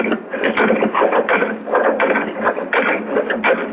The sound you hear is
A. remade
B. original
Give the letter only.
B